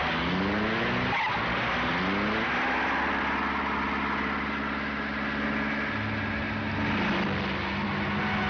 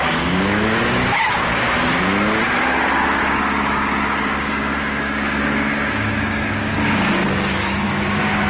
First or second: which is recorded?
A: first